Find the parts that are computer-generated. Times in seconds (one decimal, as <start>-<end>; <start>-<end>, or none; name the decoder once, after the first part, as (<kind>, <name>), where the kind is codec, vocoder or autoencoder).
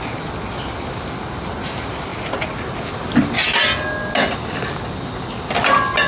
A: none